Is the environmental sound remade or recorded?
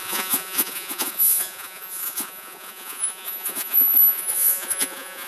remade